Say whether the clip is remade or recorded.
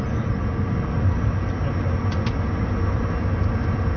recorded